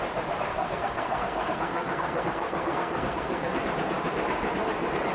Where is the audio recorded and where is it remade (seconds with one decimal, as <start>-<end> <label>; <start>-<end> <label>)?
0.0-0.5 recorded; 0.5-3.6 remade; 3.6-5.1 recorded